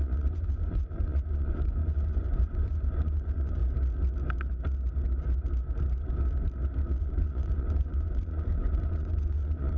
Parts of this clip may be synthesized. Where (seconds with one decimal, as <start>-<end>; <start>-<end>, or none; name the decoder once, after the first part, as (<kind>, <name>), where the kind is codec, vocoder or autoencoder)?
0.0-3.6 (vocoder, Vocos); 7.0-9.8